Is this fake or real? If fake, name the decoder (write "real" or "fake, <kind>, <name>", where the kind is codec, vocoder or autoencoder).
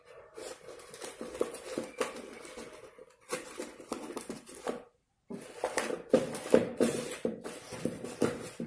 real